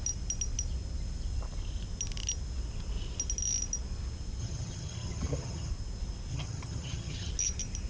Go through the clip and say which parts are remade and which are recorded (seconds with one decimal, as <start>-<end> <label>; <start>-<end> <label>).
0.0-4.4 recorded; 4.4-5.7 remade; 5.7-6.3 recorded; 6.3-7.3 remade; 7.3-7.9 recorded